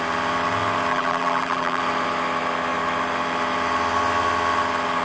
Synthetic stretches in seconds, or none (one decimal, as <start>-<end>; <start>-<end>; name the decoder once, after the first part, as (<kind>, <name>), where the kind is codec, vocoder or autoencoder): 0.9-1.8 (vocoder, BigVGAN v2)